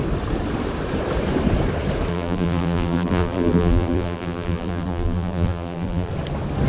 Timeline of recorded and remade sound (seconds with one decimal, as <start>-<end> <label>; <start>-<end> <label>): 0.0-2.1 recorded; 2.1-6.1 remade; 6.1-6.7 recorded